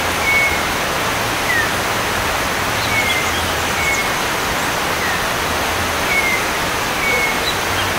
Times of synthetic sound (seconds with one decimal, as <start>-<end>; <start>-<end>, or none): none